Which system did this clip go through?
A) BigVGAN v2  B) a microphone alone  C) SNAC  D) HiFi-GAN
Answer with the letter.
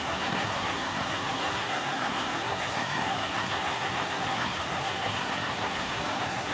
C